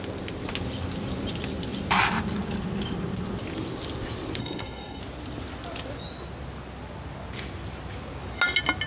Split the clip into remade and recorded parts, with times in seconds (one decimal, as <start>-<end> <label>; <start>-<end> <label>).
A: 0.0-4.4 recorded; 4.4-5.0 remade; 5.0-8.9 recorded